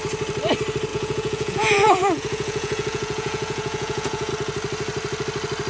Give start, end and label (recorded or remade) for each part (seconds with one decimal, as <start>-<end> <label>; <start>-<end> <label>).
0.0-0.9 recorded; 0.9-4.3 remade; 4.3-5.7 recorded